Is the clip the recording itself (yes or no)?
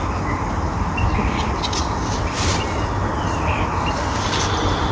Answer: yes